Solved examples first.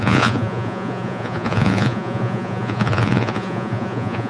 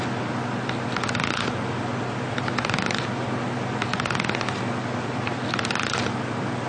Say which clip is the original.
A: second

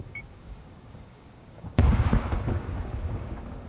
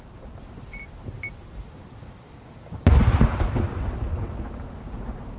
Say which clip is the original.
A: second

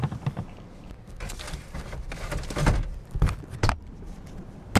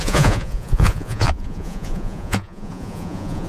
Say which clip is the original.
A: first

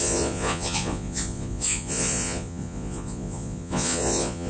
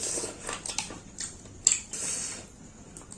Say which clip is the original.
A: second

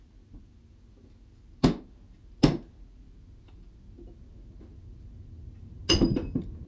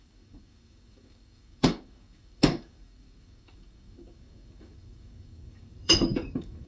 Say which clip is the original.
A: first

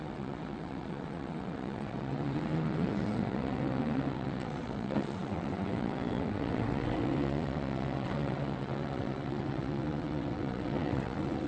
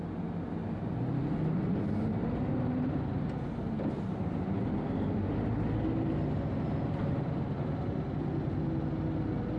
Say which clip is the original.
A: second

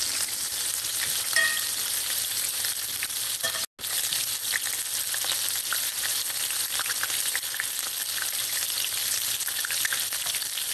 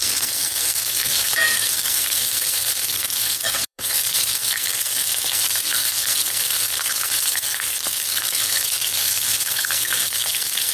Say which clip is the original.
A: first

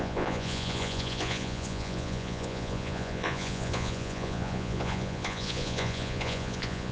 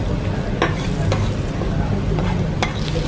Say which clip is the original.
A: second